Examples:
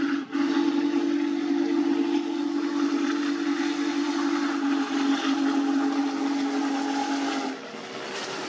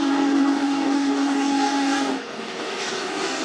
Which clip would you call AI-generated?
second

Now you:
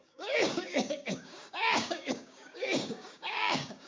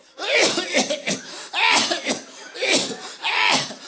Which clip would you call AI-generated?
first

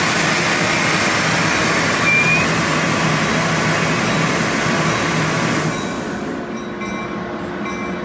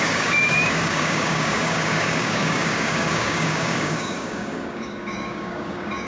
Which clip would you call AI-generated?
second